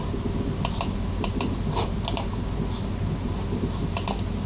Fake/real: real